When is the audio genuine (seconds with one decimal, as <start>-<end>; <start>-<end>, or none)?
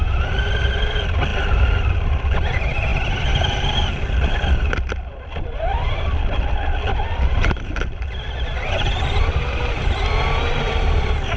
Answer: 0.0-11.4